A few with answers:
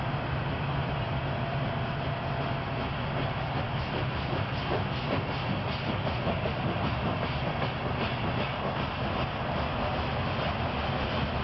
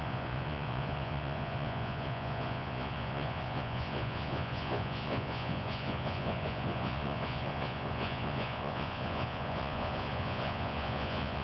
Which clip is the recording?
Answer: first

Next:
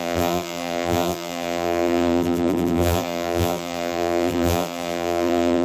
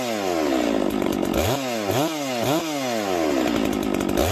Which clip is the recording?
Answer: second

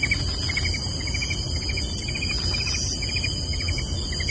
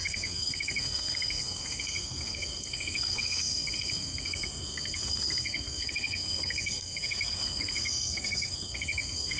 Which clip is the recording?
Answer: first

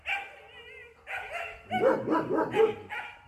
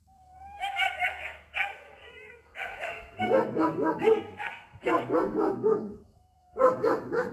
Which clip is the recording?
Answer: first